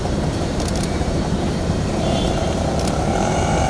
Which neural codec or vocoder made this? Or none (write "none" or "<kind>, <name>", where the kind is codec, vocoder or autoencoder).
vocoder, BigVGAN v2